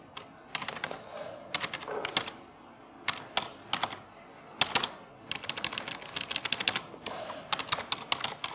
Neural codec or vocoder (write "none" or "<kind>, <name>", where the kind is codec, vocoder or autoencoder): none